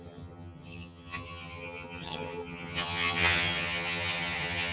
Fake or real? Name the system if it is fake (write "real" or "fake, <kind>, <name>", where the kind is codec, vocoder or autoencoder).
fake, vocoder, HiFi-GAN